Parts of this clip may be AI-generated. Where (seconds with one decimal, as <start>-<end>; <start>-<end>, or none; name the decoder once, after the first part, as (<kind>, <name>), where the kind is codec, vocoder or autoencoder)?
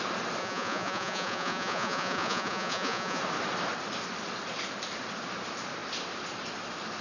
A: 0.4-3.2 (vocoder, Vocos)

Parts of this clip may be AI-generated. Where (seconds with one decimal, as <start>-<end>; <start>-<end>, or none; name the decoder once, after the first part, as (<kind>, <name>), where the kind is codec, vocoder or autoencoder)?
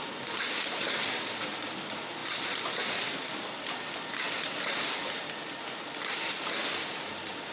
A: none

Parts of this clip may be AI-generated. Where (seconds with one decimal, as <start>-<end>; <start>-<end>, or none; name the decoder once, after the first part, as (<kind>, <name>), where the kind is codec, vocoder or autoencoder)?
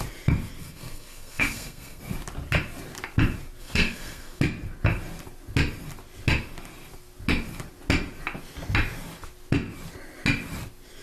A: 0.6-2.0 (codec, SNAC); 3.6-4.4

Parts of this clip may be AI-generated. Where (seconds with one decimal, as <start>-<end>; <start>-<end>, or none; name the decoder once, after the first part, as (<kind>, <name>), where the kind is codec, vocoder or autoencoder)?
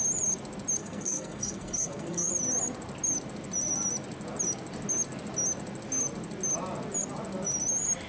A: 0.8-2.3 (codec, SNAC)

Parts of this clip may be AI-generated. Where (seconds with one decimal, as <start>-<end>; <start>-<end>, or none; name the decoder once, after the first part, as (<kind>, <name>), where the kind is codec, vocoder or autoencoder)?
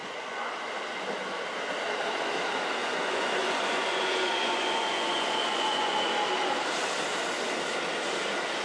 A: 0.0-0.5 (vocoder, Vocos); 2.8-6.1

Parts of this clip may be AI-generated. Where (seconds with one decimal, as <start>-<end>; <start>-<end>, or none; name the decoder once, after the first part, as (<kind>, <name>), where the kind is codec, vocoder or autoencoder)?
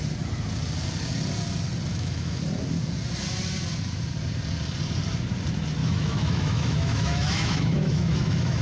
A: 1.9-2.4 (autoencoder, DAC-VAE); 5.8-8.6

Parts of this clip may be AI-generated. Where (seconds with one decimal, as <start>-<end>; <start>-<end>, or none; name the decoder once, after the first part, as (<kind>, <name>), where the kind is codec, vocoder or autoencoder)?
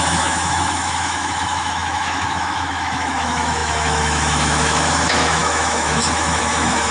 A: 0.0-6.9 (autoencoder, DAC-VAE)